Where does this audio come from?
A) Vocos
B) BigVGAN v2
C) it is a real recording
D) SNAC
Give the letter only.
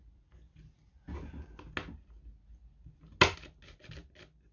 C